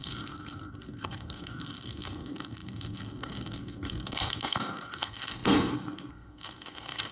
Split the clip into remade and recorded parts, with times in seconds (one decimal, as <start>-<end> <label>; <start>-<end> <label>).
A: 0.0-7.1 remade